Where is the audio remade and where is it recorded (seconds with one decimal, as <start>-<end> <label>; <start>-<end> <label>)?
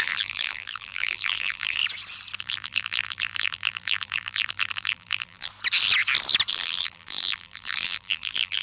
0.0-1.8 remade; 1.8-2.4 recorded; 2.4-5.5 remade; 5.5-6.5 recorded; 6.5-8.6 remade